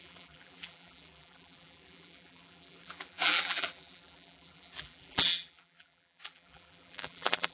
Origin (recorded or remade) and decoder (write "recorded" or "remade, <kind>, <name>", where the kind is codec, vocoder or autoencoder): remade, vocoder, BigVGAN v2